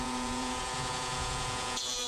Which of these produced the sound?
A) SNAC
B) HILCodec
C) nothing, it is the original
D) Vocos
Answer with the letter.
D